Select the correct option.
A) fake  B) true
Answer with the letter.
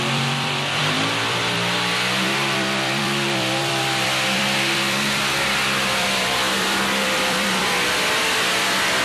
A